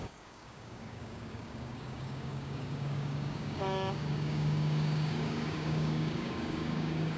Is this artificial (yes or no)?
yes